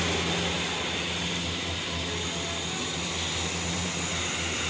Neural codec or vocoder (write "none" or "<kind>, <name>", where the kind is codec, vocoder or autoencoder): none